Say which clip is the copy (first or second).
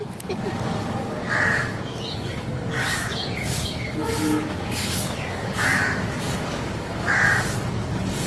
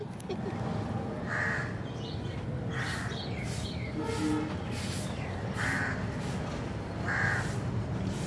first